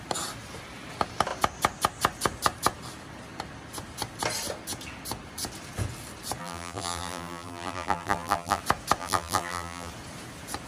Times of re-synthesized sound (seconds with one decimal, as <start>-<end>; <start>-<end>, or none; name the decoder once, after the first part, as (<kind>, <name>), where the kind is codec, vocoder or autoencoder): 6.4-8.6 (vocoder, BigVGAN v2); 9.0-9.9